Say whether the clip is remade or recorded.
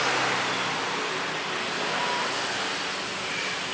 recorded